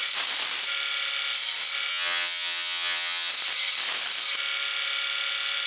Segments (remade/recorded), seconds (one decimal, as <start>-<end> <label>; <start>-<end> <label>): 0.0-1.9 recorded; 1.9-3.3 remade; 3.3-5.7 recorded